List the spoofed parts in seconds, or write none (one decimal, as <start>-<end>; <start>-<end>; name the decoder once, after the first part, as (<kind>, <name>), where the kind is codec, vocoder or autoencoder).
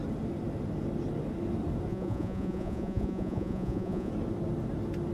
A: 1.9-4.1 (vocoder, Vocos)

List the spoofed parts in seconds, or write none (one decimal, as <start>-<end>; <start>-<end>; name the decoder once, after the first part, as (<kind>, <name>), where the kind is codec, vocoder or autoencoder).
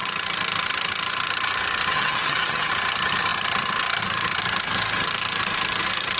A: 1.9-2.7 (vocoder, HiFi-GAN)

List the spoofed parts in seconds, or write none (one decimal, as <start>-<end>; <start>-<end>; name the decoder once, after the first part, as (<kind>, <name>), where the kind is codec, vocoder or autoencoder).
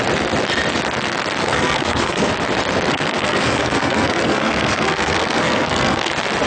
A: 1.4-2.3 (codec, SNAC); 2.9-6.1